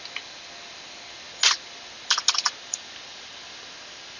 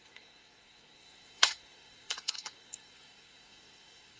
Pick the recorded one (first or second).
first